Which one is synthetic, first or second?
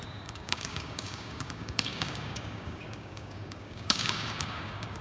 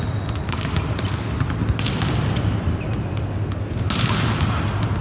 first